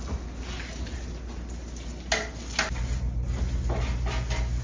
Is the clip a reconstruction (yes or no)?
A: no